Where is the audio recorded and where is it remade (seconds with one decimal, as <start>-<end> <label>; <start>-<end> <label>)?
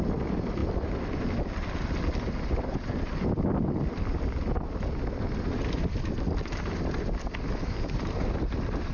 0.0-8.9 recorded